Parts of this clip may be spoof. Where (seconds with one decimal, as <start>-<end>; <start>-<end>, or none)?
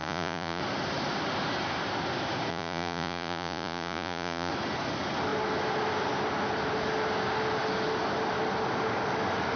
0.0-0.6; 2.5-4.5